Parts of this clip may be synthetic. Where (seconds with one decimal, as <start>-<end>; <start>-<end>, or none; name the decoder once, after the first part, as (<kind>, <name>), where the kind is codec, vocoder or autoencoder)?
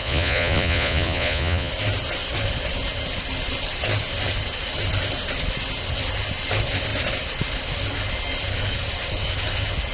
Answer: 0.0-1.7 (vocoder, Vocos)